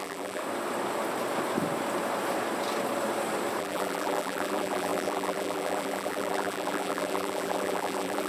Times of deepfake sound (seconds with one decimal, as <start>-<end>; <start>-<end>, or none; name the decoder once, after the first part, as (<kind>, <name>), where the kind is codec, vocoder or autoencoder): 0.0-0.4 (vocoder, BigVGAN v2); 3.6-8.3